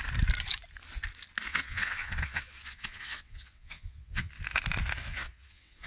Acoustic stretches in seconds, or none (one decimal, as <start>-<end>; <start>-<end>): 0.0-1.5; 4.3-5.0